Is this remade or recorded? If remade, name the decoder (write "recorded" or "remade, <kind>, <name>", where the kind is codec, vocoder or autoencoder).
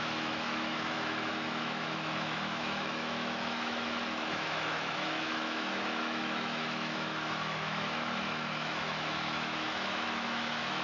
remade, autoencoder, DAC-VAE